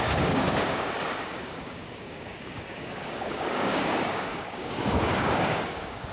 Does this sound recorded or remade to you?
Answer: remade